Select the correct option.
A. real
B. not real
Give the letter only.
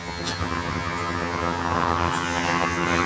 B